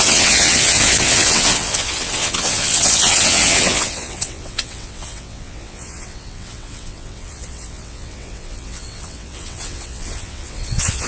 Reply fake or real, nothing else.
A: fake